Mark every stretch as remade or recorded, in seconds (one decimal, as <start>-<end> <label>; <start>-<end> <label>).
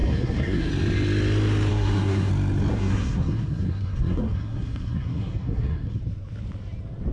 0.0-0.7 remade; 0.7-1.7 recorded; 1.7-2.3 remade; 2.3-2.7 recorded; 2.7-6.0 remade; 6.0-7.1 recorded